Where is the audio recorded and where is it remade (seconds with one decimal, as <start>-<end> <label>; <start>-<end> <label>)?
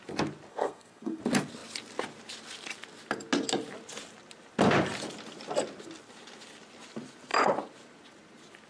0.0-0.5 recorded; 0.5-1.2 remade; 1.2-8.7 recorded